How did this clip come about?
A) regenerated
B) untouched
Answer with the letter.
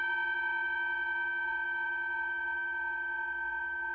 A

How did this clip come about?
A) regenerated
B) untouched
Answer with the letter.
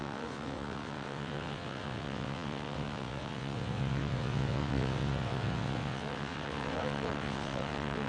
A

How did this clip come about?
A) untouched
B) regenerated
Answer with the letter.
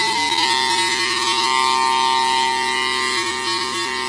A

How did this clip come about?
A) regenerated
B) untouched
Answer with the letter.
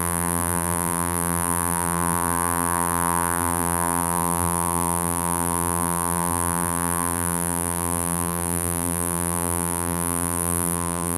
A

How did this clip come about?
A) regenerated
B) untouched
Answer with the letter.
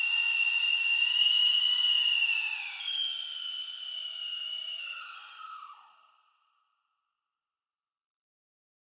B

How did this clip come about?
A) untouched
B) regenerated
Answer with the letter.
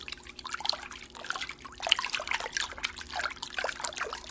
A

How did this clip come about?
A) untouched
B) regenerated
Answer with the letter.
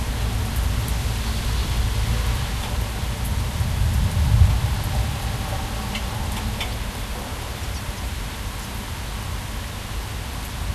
A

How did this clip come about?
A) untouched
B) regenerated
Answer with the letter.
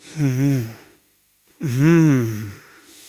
B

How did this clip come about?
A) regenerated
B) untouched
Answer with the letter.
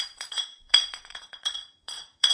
A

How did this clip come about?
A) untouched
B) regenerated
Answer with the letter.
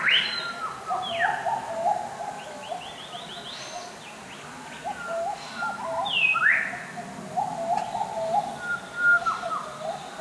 A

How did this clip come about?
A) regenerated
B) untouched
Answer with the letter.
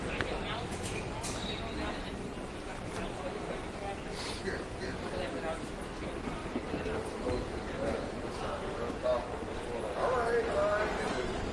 B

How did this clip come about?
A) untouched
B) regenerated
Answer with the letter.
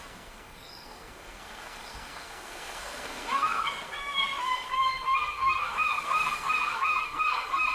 B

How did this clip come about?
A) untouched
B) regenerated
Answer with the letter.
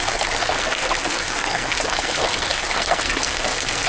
B